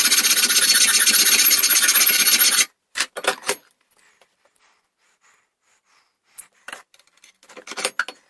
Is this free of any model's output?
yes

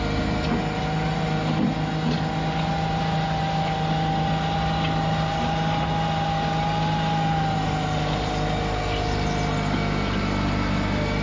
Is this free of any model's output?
yes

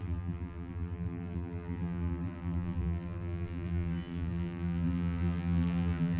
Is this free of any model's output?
no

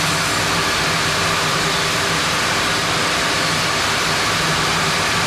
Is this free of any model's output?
yes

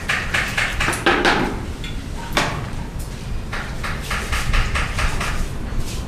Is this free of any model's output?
no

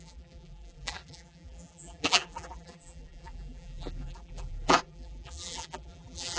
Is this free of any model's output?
no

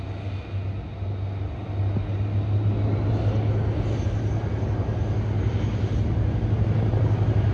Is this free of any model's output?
yes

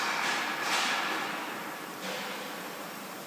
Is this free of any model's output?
yes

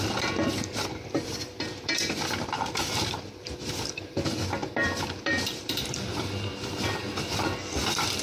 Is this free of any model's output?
no